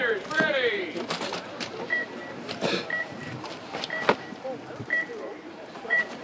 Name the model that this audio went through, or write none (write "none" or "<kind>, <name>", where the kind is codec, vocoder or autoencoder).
vocoder, BigVGAN v2